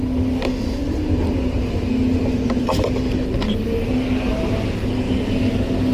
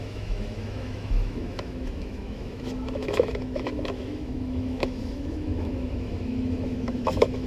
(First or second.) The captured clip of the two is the first